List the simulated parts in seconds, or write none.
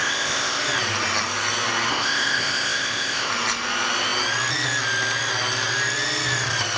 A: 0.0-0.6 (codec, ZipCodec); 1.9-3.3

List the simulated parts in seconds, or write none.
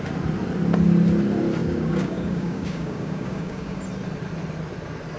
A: 1.6-3.8 (codec, DAC)